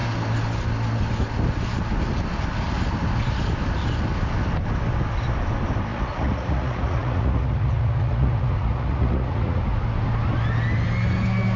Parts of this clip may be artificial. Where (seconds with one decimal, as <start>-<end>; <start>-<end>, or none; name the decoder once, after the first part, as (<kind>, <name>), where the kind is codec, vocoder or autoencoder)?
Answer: 5.9-9.6 (vocoder, Vocos)